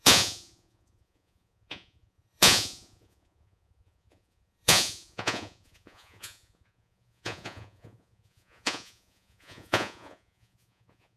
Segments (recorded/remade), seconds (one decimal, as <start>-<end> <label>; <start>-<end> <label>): 0.0-11.2 remade